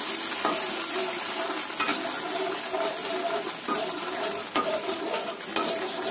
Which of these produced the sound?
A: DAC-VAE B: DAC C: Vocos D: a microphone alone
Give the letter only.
D